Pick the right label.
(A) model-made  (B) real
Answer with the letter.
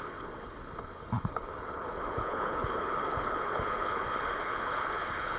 A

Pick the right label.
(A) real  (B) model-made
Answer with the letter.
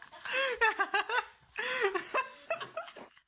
A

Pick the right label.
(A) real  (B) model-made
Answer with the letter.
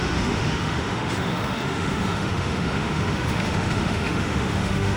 B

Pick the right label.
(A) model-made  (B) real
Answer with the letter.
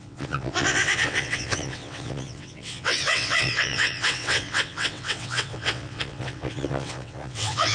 A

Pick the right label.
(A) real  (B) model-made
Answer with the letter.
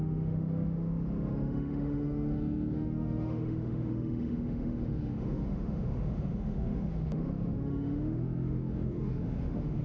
B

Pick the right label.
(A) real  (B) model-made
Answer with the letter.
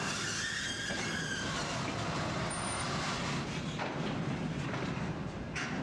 A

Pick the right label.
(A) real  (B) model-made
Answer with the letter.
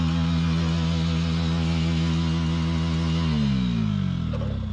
A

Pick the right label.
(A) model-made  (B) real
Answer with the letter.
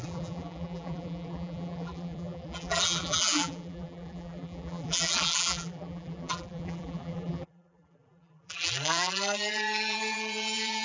A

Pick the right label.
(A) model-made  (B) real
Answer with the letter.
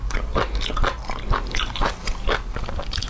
B